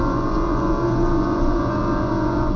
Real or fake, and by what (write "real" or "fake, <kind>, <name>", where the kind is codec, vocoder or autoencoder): fake, vocoder, Vocos